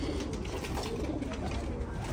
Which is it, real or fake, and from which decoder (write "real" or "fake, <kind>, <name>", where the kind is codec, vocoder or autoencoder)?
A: real